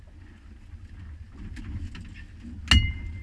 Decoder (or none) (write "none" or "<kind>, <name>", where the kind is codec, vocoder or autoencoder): none